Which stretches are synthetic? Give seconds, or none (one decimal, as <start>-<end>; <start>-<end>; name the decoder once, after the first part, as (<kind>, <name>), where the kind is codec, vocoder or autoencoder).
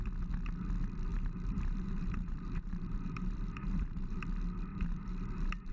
1.1-4.2 (vocoder, BigVGAN v2); 4.7-5.7